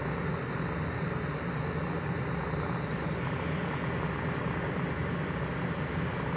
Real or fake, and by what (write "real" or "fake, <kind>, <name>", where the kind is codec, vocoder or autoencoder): real